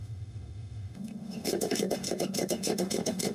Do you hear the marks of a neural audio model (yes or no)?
yes